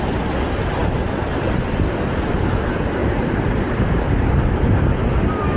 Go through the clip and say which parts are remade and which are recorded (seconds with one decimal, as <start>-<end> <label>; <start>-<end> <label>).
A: 0.0-3.0 recorded; 3.0-4.6 remade; 4.6-5.6 recorded